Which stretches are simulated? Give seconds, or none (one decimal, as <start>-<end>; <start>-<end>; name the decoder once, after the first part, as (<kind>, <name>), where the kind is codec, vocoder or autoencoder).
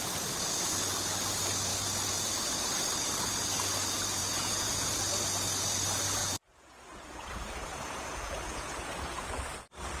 4.2-5.1 (vocoder, Vocos); 6.2-9.3